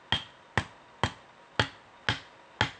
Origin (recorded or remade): recorded